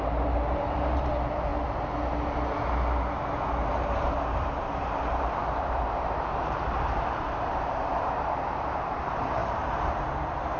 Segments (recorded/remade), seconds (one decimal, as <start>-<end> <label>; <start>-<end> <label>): 0.0-1.5 remade; 1.5-3.6 recorded; 3.6-10.6 remade